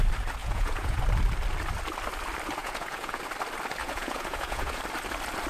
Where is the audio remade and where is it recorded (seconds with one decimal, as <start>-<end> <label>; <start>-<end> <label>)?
0.0-0.4 recorded; 0.4-1.0 remade; 1.0-2.6 recorded; 2.6-3.2 remade; 3.2-3.8 recorded; 3.8-4.8 remade; 4.8-5.5 recorded